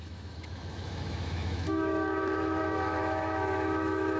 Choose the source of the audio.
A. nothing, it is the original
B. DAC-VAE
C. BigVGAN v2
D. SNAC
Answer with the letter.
B